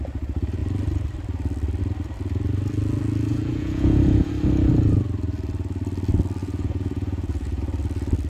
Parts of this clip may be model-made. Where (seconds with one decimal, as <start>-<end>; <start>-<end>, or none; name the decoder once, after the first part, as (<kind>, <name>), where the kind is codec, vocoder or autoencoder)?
3.3-4.3 (vocoder, Vocos); 6.4-7.6